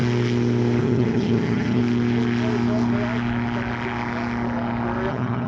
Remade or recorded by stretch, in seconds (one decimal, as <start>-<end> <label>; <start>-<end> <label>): 0.0-0.8 recorded; 0.8-1.8 remade; 1.8-5.1 recorded; 5.1-5.5 remade